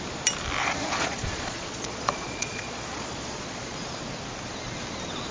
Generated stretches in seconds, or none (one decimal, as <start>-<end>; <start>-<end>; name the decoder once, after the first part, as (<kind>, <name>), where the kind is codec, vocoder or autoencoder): 0.6-3.8 (vocoder, Vocos)